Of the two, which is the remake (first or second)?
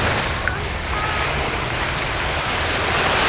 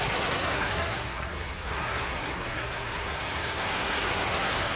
second